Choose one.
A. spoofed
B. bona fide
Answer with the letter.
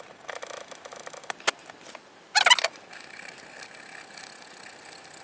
B